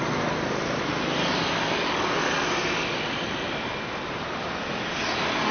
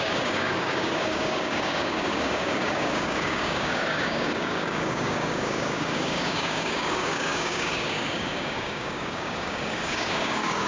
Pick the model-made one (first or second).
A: second